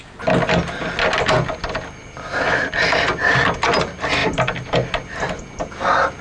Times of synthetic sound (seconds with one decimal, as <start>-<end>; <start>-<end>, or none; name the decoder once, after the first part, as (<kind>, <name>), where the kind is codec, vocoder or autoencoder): none